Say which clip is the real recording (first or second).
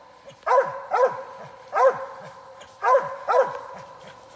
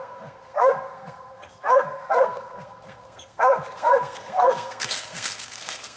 first